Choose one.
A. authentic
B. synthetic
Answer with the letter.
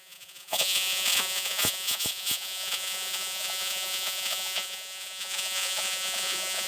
B